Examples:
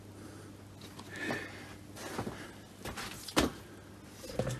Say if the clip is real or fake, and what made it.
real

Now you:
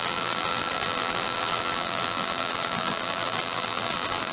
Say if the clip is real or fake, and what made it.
fake, vocoder, BigVGAN v2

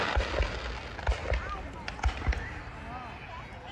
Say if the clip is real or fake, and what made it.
real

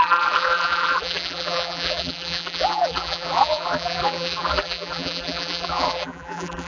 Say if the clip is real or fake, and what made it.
fake, vocoder, BigVGAN v2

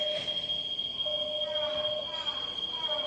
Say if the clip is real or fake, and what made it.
real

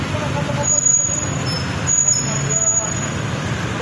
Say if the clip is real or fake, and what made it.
real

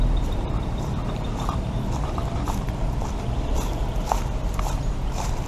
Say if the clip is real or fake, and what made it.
fake, vocoder, BigVGAN v2